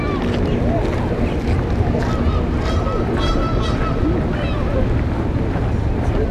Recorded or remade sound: recorded